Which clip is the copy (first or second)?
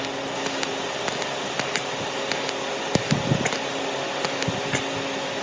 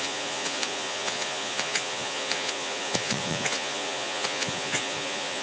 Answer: second